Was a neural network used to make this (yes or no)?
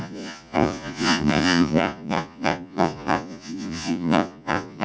yes